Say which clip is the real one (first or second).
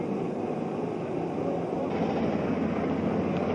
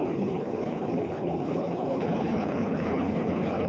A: first